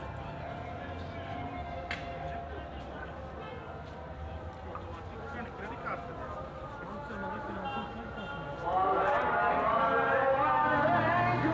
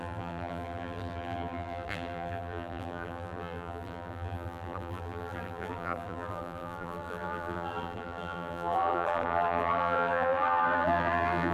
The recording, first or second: first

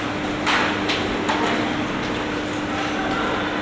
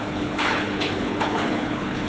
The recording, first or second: first